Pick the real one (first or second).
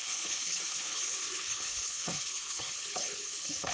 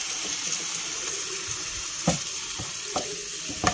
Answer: second